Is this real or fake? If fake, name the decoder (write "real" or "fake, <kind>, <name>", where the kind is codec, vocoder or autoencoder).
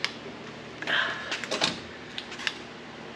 real